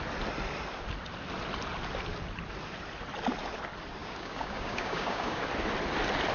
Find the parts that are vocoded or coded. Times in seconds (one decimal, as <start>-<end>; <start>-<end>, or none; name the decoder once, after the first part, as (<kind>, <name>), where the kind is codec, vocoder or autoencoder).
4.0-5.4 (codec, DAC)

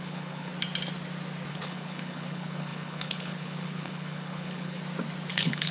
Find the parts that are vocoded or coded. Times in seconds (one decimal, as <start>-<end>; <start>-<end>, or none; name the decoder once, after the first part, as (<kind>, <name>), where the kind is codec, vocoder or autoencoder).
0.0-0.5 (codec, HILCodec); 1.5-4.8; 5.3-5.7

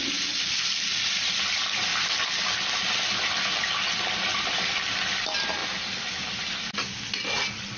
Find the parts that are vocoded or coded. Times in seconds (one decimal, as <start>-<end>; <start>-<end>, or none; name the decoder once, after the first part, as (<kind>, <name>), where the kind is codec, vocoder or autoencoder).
1.9-2.9 (vocoder, BigVGAN v2); 4.3-5.0

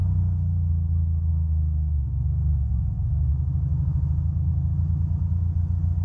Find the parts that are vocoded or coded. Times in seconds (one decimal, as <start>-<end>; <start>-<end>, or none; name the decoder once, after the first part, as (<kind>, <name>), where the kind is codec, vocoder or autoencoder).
0.0-0.7 (codec, SNAC); 1.3-3.3

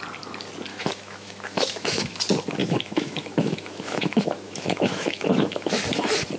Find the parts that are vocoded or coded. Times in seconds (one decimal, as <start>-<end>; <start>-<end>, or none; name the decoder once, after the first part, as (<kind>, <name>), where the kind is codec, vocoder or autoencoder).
0.7-2.2 (autoencoder, DAC-VAE); 2.6-5.8

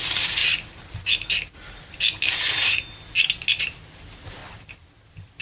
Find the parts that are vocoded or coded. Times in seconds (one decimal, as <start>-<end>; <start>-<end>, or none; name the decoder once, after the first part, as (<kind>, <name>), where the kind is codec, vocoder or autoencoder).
none